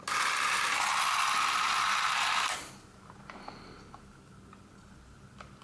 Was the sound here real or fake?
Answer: real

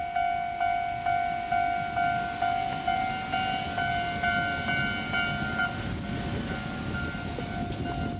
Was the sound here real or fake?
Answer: real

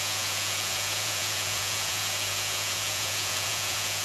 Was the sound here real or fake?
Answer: fake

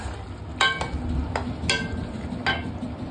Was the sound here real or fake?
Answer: real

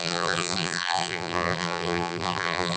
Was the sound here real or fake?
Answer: fake